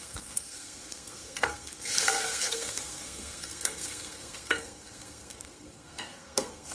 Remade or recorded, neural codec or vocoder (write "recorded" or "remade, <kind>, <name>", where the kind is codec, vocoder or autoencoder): remade, codec, SNAC